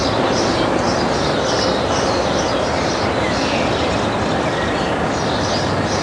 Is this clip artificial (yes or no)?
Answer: no